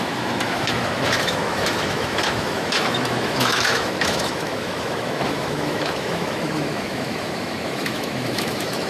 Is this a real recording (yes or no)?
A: no